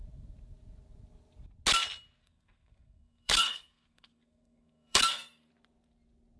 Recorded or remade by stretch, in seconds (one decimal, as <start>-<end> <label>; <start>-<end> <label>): 0.0-2.2 recorded; 2.2-5.5 remade; 5.5-6.4 recorded